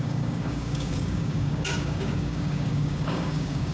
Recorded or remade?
remade